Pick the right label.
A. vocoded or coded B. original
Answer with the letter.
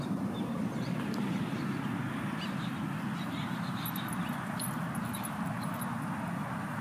B